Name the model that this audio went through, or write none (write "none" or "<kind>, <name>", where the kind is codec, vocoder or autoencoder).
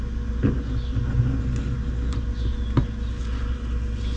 none